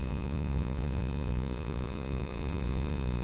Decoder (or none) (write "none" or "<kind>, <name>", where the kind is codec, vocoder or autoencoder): vocoder, Vocos